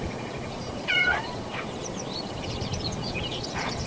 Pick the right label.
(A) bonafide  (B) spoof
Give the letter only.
B